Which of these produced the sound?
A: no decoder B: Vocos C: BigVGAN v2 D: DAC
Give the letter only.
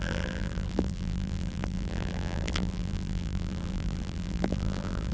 C